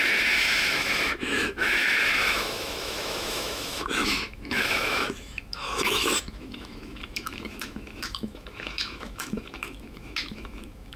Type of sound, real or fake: fake